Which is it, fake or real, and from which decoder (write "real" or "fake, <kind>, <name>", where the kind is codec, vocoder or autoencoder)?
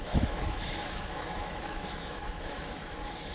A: fake, autoencoder, DAC-VAE